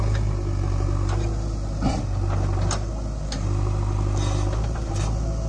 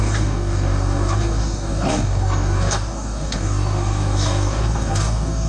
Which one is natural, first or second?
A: first